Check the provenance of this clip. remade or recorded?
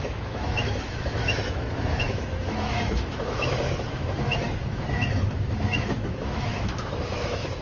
remade